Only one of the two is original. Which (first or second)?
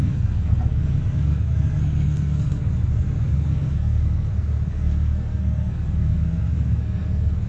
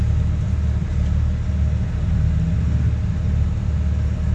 second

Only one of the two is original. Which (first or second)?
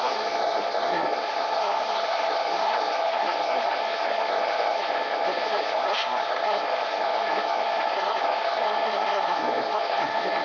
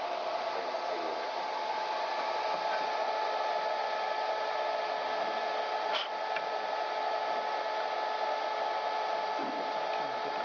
second